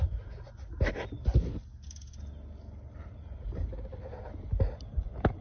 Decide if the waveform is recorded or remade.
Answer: recorded